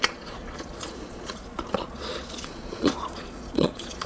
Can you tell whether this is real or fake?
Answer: fake